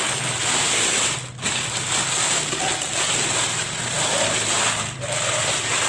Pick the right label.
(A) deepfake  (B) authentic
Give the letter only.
B